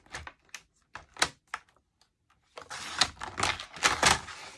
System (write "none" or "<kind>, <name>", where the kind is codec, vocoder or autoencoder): none